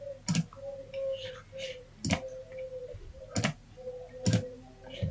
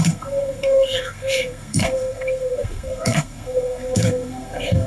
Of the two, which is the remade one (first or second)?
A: second